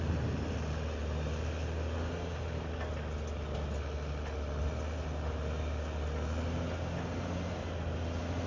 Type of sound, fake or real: real